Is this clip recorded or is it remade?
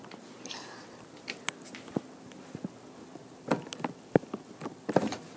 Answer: recorded